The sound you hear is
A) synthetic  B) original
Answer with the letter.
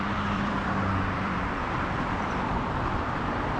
A